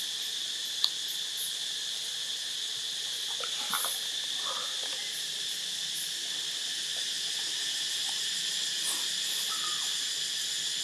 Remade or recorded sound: recorded